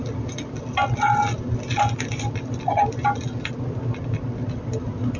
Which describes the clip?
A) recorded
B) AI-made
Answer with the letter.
A